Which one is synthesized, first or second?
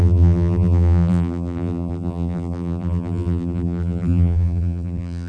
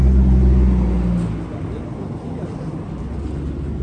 first